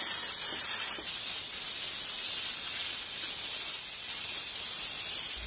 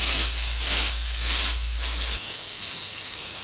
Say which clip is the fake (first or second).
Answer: second